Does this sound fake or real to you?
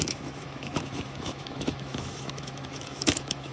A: fake